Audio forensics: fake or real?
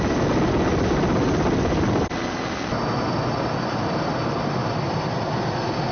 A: real